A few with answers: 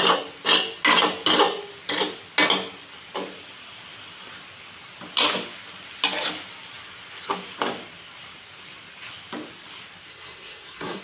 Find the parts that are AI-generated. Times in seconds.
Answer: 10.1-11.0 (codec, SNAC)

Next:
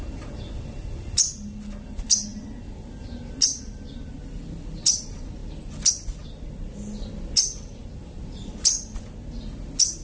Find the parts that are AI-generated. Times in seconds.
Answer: none

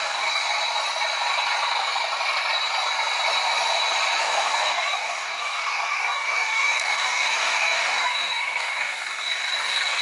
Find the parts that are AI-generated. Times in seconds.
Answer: 0.0-0.4 (codec, DAC); 4.2-10.0

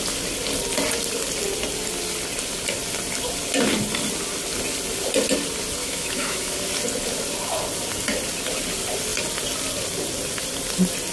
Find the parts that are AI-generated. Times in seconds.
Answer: 5.8-6.6 (autoencoder, DAC-VAE)

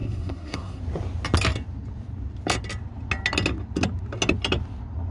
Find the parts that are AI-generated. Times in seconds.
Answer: 0.0-0.8 (codec, SNAC)

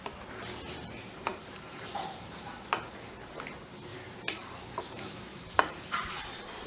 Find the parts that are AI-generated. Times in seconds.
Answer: 1.3-2.5 (vocoder, BigVGAN v2); 3.9-4.8; 5.3-6.2

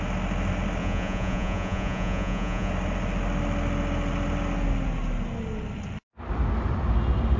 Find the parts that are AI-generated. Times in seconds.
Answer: 0.8-2.7 (vocoder, Vocos)

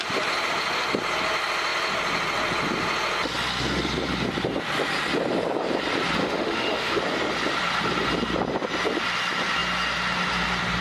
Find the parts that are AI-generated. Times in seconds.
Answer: 6.2-7.0 (autoencoder, DAC-VAE)